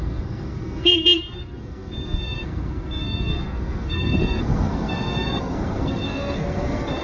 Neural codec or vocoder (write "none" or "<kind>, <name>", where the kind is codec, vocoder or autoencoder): codec, SNAC